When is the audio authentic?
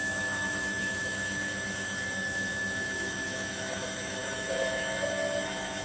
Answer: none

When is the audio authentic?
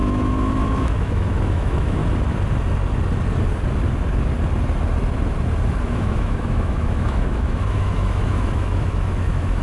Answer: 2.0-5.8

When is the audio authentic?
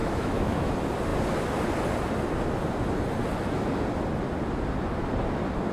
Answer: 0.7-5.7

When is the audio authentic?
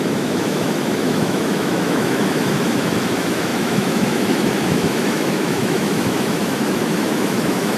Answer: none